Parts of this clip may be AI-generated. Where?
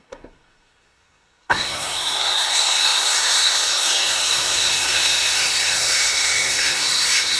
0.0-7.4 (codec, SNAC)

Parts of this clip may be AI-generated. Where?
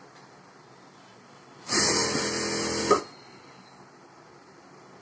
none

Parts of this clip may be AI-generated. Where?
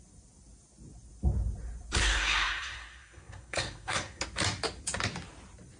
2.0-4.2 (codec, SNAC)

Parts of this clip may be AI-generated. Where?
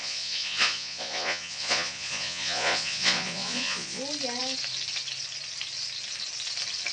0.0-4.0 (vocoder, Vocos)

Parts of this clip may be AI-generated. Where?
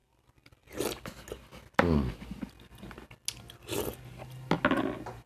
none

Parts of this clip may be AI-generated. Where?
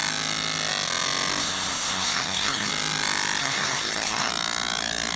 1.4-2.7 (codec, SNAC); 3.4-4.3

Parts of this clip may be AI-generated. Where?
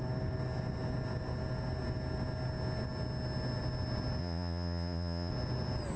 4.2-5.3 (vocoder, Vocos)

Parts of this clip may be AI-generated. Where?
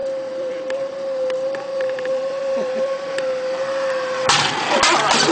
0.0-3.2 (vocoder, BigVGAN v2)